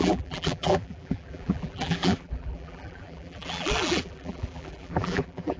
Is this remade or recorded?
remade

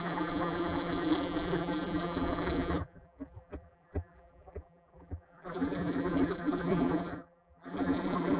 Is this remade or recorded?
remade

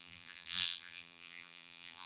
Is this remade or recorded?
remade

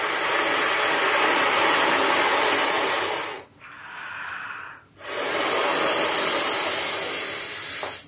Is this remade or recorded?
recorded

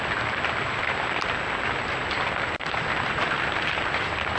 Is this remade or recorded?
remade